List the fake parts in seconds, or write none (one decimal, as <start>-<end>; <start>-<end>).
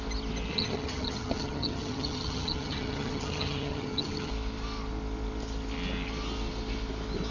0.5-4.3